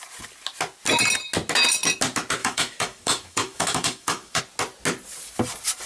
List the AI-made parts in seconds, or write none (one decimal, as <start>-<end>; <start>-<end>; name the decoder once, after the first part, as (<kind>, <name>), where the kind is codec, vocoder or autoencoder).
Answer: 2.4-4.4 (autoencoder, DAC-VAE)